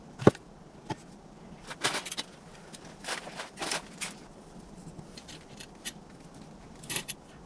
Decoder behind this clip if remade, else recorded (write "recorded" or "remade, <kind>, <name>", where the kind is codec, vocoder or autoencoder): remade, vocoder, BigVGAN v2